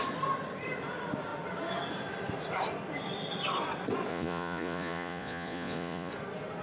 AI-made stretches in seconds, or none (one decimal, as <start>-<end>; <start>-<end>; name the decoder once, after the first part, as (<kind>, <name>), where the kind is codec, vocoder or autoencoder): 4.1-6.1 (vocoder, Vocos)